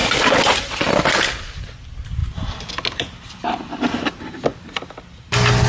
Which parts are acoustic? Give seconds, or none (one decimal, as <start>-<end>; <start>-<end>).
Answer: 0.0-5.7